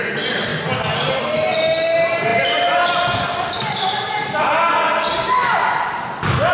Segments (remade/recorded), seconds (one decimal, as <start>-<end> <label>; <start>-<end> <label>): 0.0-6.5 recorded

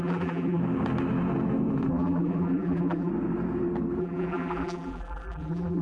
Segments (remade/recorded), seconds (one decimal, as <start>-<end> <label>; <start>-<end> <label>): 0.0-0.6 remade; 0.6-1.9 recorded; 1.9-3.1 remade; 3.1-4.0 recorded; 4.0-5.8 remade